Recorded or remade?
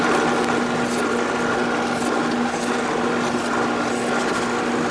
recorded